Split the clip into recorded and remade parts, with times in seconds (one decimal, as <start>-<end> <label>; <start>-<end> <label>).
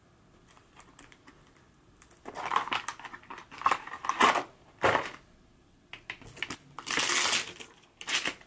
0.0-8.5 recorded